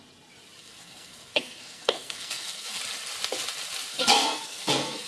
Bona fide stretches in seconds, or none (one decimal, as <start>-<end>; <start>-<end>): 0.0-0.6; 2.8-3.9